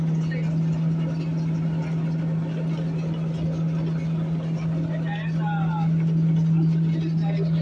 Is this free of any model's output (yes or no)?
yes